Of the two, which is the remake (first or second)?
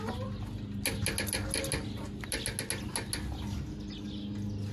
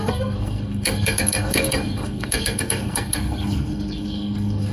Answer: second